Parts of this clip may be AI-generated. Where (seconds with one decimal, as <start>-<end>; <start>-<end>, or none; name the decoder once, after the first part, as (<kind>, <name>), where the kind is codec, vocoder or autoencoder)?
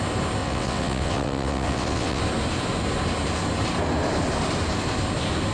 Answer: 0.4-2.2 (vocoder, WaveNeXt)